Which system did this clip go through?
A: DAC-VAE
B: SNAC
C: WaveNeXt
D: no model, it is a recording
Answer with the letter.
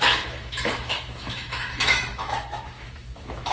A